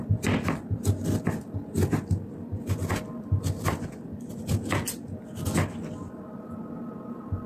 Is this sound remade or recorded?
recorded